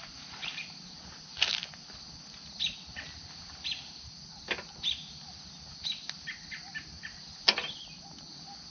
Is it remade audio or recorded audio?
recorded